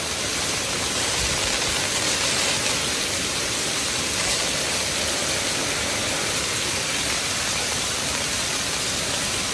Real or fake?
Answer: real